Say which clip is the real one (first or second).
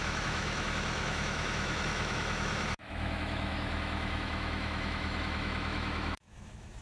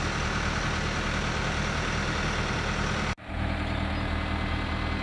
second